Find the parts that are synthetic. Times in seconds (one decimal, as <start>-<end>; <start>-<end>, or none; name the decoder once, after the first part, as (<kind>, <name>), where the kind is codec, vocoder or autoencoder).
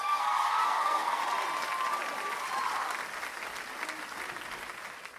0.0-1.2 (codec, SNAC)